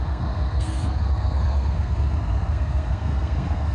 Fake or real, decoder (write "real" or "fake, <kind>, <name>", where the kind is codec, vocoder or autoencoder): fake, codec, SNAC